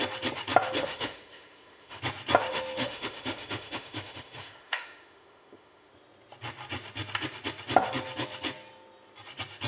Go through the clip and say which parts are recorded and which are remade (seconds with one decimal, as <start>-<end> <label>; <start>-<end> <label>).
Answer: 0.0-0.8 recorded; 0.8-2.0 remade; 2.0-2.5 recorded; 2.5-5.9 remade; 5.9-9.7 recorded